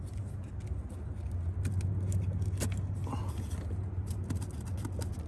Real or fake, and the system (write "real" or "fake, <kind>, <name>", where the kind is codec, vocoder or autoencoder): real